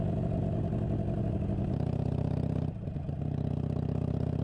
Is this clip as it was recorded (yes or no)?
yes